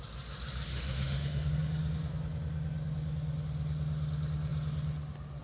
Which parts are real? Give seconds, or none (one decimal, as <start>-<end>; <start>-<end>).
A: 0.0-0.7; 1.5-5.4